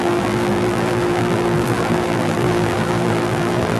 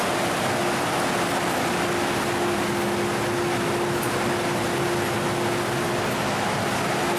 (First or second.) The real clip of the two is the second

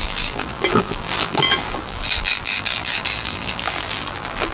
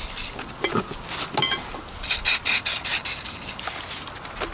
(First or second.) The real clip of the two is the second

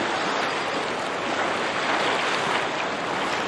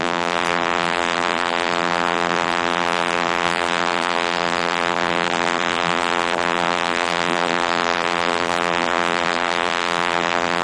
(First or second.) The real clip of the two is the first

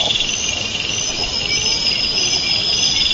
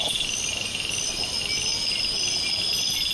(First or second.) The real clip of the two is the second